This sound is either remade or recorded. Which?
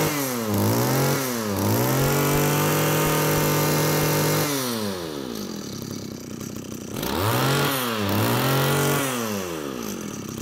recorded